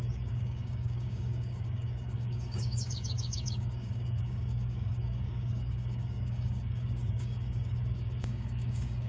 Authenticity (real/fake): fake